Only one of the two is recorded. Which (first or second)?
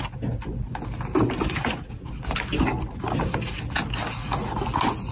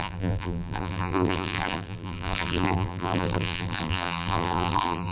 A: first